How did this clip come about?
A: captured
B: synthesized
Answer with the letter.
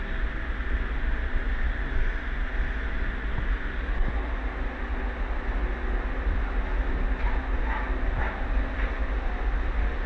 A